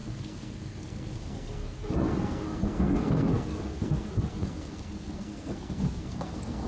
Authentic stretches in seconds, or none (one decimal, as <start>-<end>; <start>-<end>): none